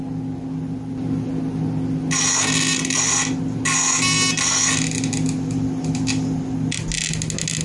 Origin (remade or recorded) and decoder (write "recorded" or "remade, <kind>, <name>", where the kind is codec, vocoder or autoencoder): recorded